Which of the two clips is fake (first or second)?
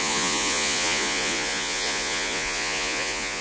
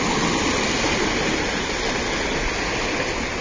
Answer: first